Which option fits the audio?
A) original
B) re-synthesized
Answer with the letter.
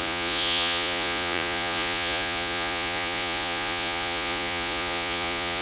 B